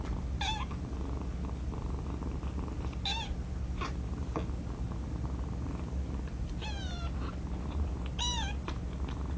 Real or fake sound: real